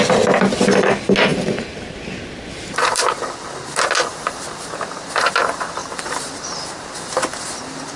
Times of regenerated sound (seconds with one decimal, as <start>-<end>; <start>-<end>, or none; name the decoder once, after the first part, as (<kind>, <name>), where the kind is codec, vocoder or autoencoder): 1.3-3.2 (vocoder, BigVGAN v2); 4.1-4.7; 5.8-6.3